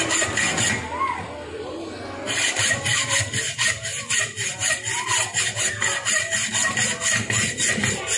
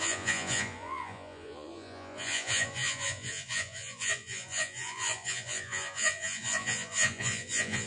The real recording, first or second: first